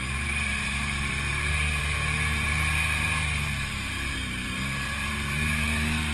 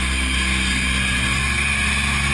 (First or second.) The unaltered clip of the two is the second